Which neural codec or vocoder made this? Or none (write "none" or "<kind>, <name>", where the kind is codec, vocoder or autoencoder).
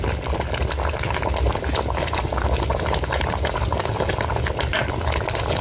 none